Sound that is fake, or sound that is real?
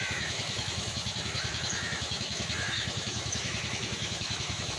fake